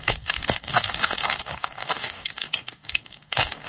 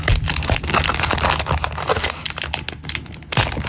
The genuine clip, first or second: second